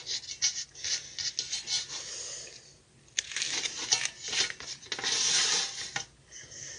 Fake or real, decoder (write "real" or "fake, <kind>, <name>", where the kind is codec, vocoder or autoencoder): real